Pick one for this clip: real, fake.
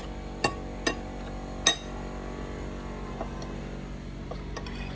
real